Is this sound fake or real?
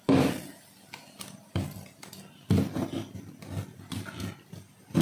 real